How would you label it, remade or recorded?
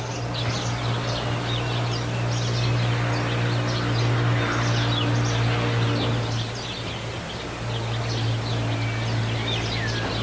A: recorded